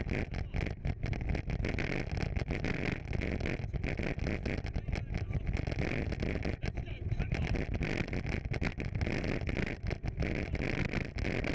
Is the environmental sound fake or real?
real